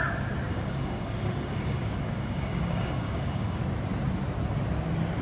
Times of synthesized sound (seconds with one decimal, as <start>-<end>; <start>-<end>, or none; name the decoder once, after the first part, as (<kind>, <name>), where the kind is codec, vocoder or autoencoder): 0.5-3.6 (codec, DAC)